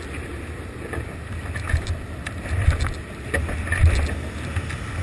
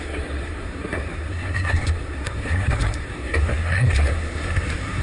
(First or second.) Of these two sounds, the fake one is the second